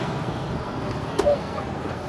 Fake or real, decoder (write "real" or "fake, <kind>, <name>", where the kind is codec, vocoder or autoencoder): fake, codec, SNAC